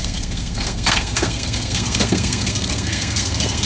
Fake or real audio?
fake